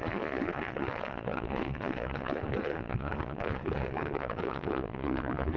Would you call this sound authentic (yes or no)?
no